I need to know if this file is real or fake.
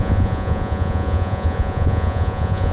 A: fake